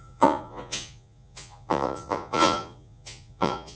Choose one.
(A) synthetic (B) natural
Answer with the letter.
A